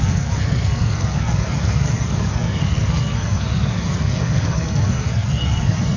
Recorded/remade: remade